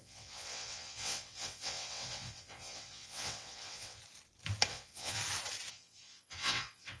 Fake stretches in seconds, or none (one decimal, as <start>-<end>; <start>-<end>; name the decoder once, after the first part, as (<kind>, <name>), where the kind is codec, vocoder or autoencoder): 0.0-4.0 (vocoder, WaveNeXt); 4.7-5.2; 5.7-7.0